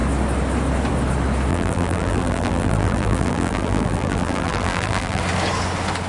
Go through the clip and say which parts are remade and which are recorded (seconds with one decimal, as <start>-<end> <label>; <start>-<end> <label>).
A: 0.0-1.5 recorded; 1.5-5.2 remade; 5.2-6.1 recorded